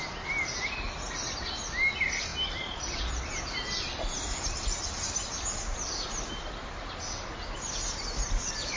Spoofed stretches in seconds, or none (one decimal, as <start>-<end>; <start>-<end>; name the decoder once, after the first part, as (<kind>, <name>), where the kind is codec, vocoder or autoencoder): none